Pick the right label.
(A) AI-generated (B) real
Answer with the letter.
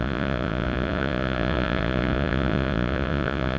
A